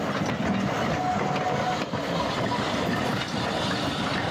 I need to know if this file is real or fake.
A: real